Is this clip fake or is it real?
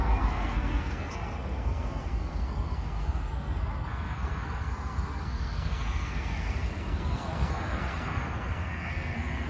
fake